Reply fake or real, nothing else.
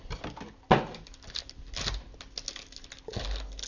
real